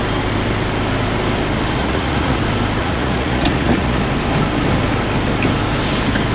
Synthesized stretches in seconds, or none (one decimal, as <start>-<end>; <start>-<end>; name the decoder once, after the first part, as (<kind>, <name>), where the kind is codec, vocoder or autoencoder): 1.8-2.4 (vocoder, Vocos); 2.8-4.0